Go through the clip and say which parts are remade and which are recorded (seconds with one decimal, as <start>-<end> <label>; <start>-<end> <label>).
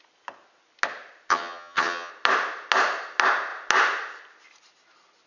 0.0-1.3 recorded; 1.3-2.1 remade; 2.1-5.3 recorded